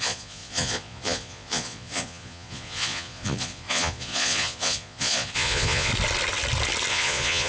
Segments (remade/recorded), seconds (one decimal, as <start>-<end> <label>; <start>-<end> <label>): 0.0-5.9 remade; 5.9-6.9 recorded; 6.9-7.5 remade